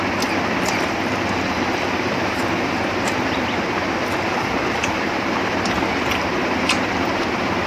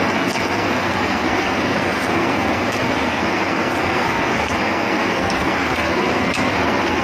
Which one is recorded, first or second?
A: first